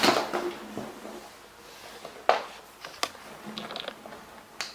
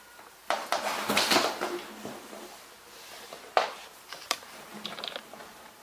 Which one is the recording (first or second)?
first